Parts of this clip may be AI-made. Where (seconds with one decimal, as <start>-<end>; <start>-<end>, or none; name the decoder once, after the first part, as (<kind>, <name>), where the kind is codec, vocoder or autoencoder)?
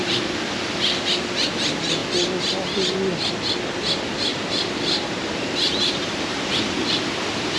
4.3-6.1 (vocoder, BigVGAN v2)